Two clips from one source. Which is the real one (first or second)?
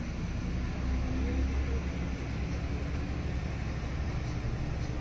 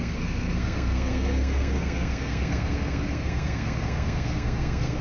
first